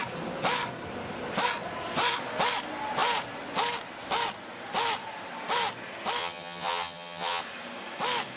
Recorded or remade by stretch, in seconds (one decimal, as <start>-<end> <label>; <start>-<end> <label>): 0.0-6.2 recorded; 6.2-7.4 remade; 7.4-8.4 recorded